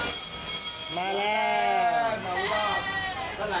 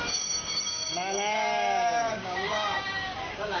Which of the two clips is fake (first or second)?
second